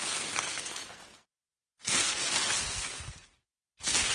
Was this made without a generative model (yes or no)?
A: no